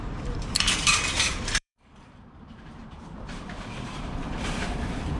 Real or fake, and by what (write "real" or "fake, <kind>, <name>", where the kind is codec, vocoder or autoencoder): fake, vocoder, BigVGAN v2